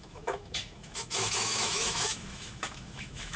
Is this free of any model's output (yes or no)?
no